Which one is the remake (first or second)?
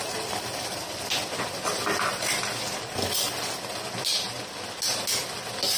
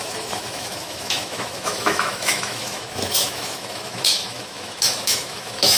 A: second